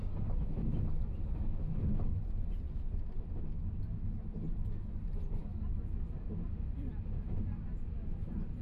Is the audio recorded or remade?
recorded